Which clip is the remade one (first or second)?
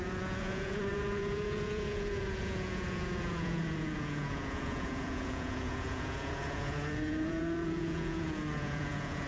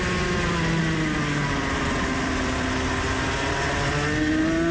first